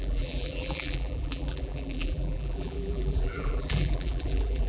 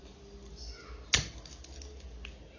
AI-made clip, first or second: first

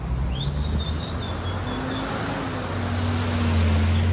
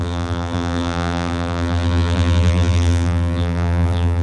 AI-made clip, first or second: second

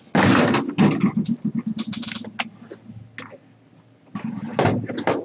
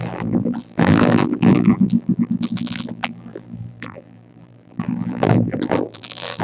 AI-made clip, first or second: second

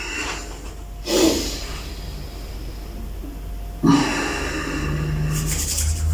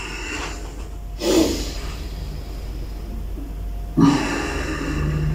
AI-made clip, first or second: second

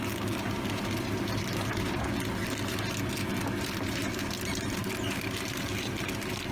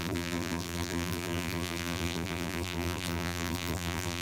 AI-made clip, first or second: second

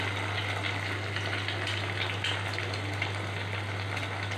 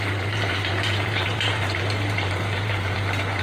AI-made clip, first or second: second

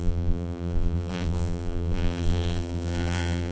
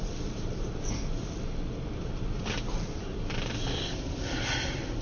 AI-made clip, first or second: first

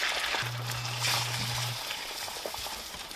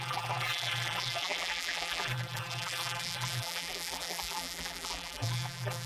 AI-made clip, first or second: second